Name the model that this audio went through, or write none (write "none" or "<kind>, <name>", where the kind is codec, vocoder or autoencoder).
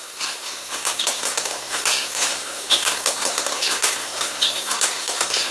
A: codec, SNAC